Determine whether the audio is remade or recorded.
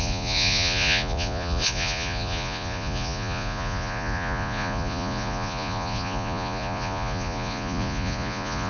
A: remade